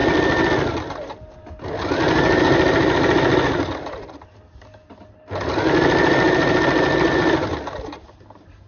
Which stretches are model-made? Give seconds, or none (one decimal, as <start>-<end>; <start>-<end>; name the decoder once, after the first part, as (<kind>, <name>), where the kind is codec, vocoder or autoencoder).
none